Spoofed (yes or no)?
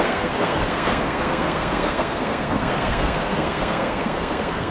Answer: yes